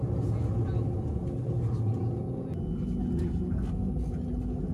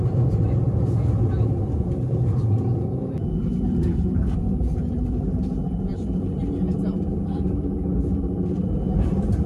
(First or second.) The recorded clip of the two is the first